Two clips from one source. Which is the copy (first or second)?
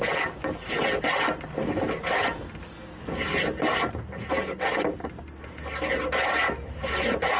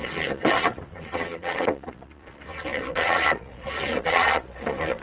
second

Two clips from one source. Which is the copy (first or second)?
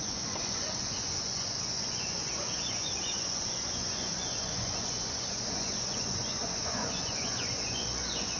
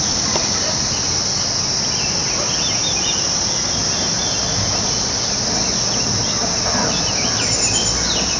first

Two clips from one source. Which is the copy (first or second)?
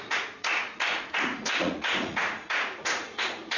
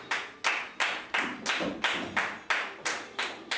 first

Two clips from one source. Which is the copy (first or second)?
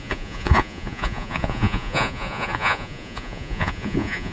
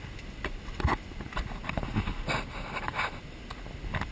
first